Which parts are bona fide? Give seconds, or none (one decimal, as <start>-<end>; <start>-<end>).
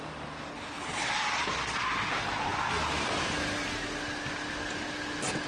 0.0-0.5; 1.1-5.5